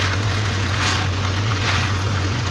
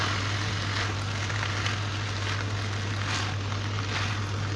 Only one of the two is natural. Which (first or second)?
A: second